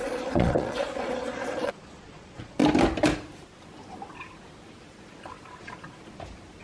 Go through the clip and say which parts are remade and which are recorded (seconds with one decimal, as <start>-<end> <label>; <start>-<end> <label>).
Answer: 0.0-2.6 remade; 2.6-6.6 recorded